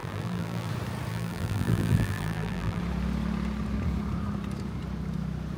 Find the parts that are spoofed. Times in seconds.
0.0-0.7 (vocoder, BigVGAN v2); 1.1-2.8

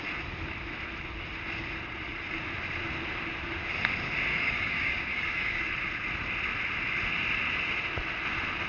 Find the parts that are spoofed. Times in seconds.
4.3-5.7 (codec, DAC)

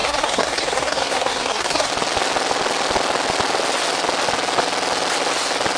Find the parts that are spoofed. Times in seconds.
0.0-1.9 (codec, SNAC)

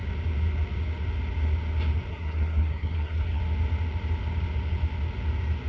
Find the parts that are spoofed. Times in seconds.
2.1-3.4 (codec, SNAC)

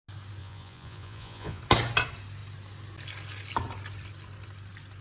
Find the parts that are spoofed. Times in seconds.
0.4-1.6 (vocoder, Vocos)

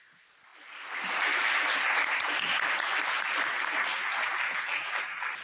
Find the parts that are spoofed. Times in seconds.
none